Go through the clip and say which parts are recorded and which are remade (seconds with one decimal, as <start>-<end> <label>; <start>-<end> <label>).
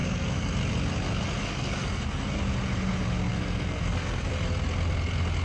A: 0.0-0.5 remade; 0.5-1.4 recorded; 1.4-2.4 remade; 2.4-3.3 recorded; 3.3-4.3 remade; 4.3-5.4 recorded